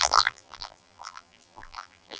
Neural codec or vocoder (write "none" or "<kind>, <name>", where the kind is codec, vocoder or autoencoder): vocoder, BigVGAN v2